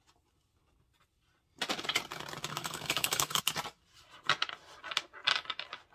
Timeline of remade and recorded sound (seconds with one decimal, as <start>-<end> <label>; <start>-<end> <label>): 0.0-2.5 recorded; 2.5-3.4 remade; 3.4-5.9 recorded